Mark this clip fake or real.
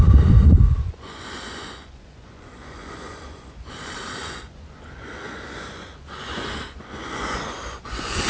fake